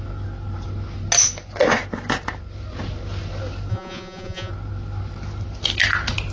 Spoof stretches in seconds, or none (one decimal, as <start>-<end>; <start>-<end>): 3.7-4.5